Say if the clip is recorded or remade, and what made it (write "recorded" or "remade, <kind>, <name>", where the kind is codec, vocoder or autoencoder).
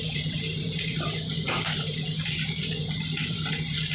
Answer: remade, vocoder, BigVGAN v2